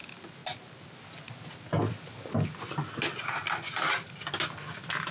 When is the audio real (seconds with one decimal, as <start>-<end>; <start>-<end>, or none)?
0.0-5.1

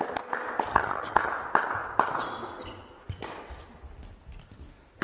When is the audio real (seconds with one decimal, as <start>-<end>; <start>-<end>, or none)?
0.0-0.7; 1.3-5.0

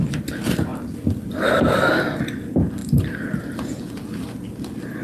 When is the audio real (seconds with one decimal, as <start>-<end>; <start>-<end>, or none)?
0.0-0.7; 1.8-5.0

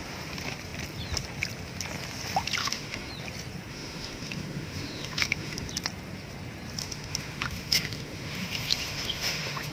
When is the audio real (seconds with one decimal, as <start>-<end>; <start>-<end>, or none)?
0.0-2.6; 3.1-3.7; 5.7-6.8

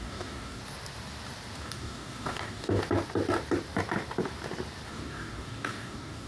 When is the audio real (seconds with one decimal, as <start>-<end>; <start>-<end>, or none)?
0.6-1.6; 2.8-4.9